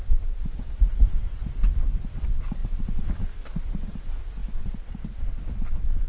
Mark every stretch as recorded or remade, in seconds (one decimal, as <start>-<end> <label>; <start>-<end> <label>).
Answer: 0.0-6.1 recorded

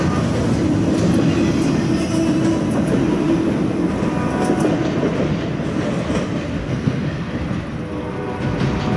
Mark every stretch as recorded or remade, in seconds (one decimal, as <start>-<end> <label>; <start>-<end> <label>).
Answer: 0.0-6.6 recorded; 6.6-7.3 remade; 7.3-9.0 recorded

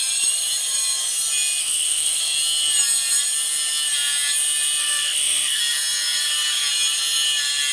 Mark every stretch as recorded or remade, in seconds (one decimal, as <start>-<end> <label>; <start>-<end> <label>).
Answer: 0.0-1.6 recorded; 1.6-2.2 remade; 2.2-4.8 recorded; 4.8-5.6 remade; 5.6-7.7 recorded

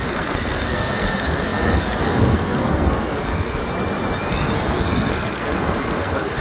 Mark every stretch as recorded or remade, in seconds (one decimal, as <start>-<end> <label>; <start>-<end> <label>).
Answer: 0.0-3.6 remade; 3.6-4.3 recorded; 4.3-6.4 remade

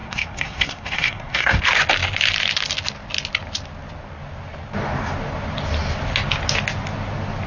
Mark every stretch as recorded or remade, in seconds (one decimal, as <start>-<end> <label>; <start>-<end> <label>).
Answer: 0.0-1.6 remade; 1.6-7.5 recorded

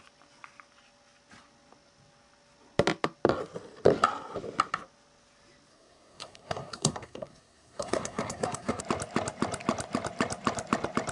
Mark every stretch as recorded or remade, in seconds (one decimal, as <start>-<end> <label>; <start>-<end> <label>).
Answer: 0.0-5.7 recorded; 5.7-8.8 remade; 8.8-11.1 recorded